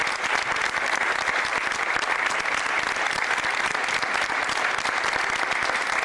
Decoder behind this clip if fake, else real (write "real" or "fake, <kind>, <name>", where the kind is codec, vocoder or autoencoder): real